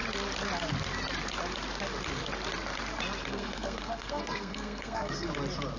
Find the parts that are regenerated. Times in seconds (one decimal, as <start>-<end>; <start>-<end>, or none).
3.3-5.3